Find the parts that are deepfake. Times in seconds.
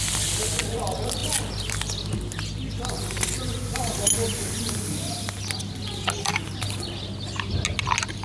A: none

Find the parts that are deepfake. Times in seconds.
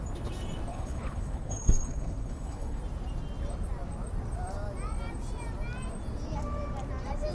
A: 0.7-2.8 (codec, HILCodec)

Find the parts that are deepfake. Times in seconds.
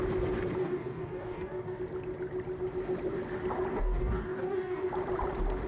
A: 0.6-1.8 (codec, DAC); 3.7-4.9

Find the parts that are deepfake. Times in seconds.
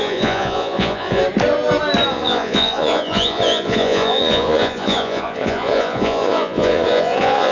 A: 0.0-1.2 (vocoder, Vocos); 2.1-7.5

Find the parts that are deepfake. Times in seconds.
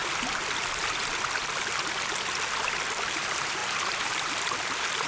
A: 3.1-5.1 (vocoder, BigVGAN v2)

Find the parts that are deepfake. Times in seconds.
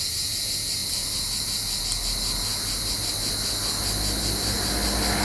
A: none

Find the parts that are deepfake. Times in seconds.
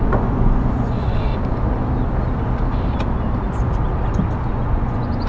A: 0.0-1.3 (vocoder, Vocos); 4.5-5.3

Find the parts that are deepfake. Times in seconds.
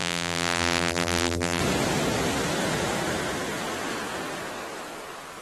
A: 0.0-1.6 (vocoder, BigVGAN v2)